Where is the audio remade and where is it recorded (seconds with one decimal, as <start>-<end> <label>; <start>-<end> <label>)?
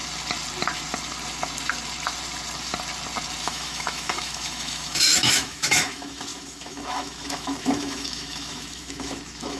0.0-3.4 recorded; 3.4-9.6 remade